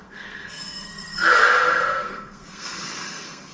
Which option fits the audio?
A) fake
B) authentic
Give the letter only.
A